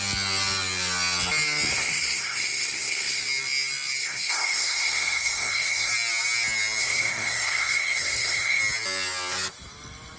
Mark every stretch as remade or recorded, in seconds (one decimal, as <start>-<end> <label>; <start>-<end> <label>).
0.0-1.7 recorded; 1.7-3.2 remade; 3.2-4.0 recorded; 4.0-5.9 remade; 5.9-6.8 recorded; 6.8-8.6 remade; 8.6-10.2 recorded